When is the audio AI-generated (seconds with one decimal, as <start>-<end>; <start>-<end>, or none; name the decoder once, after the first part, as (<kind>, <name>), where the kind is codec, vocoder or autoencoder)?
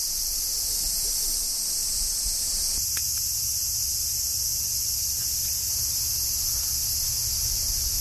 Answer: 1.8-2.4 (vocoder, BigVGAN v2)